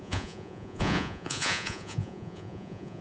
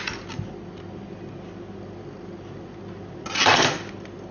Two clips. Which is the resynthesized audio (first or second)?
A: first